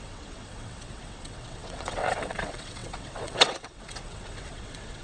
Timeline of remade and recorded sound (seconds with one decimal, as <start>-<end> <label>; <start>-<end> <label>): 0.0-5.0 remade